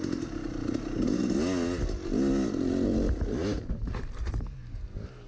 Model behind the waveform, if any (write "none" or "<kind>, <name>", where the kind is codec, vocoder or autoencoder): none